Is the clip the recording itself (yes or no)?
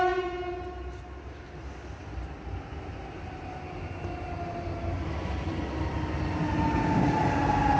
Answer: yes